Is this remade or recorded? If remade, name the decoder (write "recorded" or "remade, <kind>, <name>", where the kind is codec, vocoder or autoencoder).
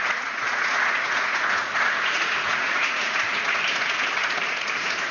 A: remade, vocoder, Vocos